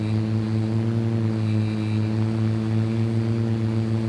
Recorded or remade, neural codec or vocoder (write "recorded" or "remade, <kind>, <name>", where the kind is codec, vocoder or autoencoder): recorded